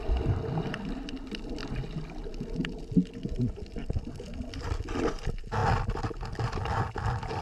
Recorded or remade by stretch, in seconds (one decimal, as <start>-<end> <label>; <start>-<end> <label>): 0.0-7.4 recorded

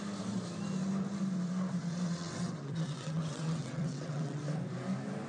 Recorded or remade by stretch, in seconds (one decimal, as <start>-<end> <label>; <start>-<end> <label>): 0.0-2.2 recorded; 2.2-4.4 remade; 4.4-5.3 recorded

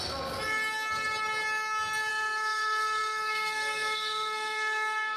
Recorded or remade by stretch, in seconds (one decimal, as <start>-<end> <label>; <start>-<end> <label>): 0.0-2.1 recorded; 2.1-5.2 remade

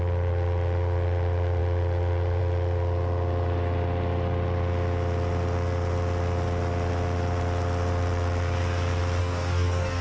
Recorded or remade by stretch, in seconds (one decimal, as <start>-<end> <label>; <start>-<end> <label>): 0.0-9.2 recorded; 9.2-10.0 remade

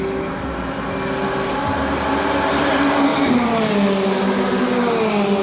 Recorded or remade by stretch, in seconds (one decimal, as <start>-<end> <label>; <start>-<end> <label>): 0.0-5.4 recorded

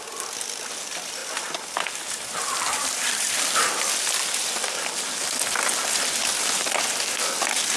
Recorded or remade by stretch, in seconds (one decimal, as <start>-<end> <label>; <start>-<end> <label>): 0.0-1.2 recorded; 1.2-3.9 remade; 3.9-7.8 recorded

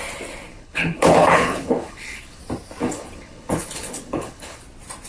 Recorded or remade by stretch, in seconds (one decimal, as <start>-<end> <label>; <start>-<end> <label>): 0.0-0.5 recorded; 0.5-2.4 remade; 2.4-2.8 recorded; 2.8-4.6 remade; 4.6-5.1 recorded

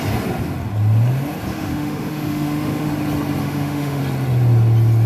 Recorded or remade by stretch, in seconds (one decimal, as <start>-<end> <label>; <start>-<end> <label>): 0.0-1.5 recorded; 1.5-2.9 remade; 2.9-3.4 recorded; 3.4-4.0 remade; 4.0-5.1 recorded